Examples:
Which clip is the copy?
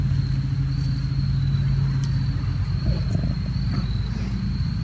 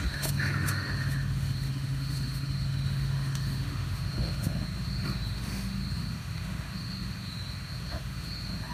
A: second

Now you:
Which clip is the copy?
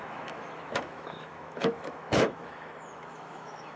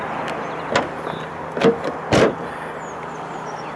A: first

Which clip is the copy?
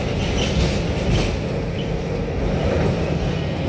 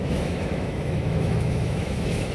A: second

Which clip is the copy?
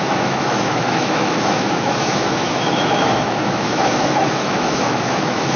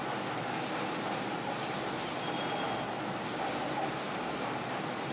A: first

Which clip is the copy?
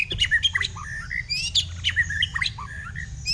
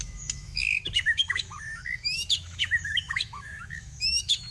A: second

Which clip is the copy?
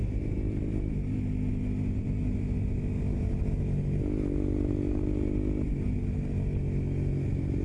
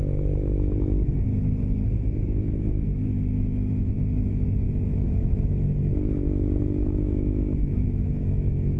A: second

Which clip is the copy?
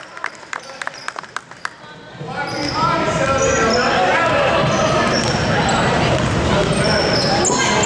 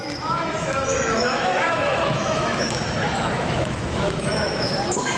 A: second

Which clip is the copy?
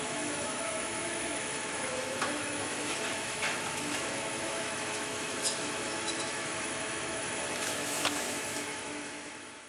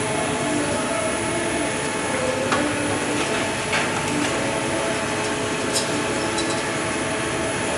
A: first